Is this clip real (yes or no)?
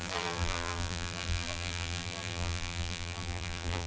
no